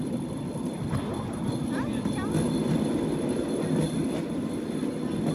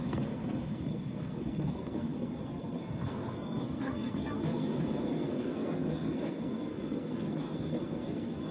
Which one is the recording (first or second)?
first